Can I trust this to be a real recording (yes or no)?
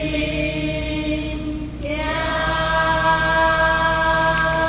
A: yes